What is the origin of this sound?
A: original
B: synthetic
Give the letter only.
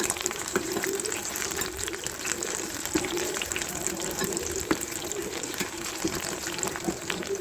B